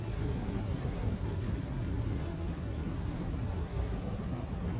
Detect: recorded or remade remade